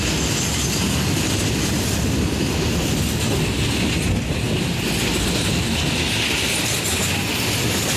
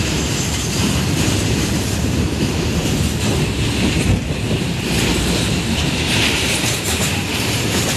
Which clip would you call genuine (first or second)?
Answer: first